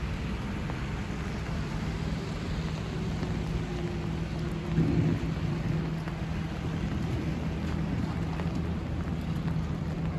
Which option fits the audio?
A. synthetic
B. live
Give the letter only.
B